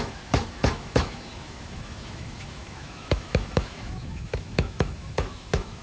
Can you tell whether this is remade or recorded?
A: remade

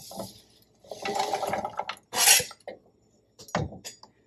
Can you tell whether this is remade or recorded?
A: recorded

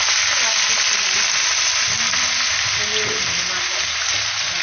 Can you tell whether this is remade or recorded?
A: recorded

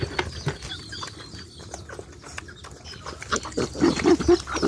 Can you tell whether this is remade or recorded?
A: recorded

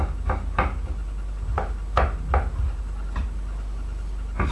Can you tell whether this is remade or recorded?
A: recorded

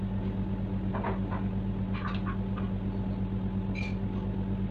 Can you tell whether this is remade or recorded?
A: recorded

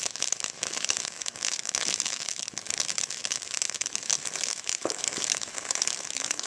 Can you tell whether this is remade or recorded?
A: remade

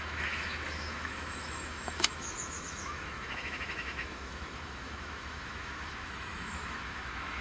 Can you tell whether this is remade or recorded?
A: remade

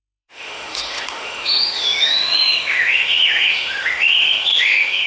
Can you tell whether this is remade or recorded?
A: remade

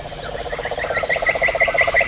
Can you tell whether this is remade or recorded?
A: recorded